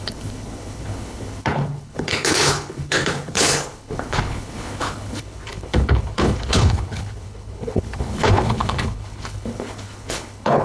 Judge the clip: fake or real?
fake